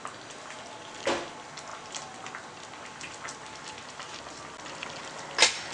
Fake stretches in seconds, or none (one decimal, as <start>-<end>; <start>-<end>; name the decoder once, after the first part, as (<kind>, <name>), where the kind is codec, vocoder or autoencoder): none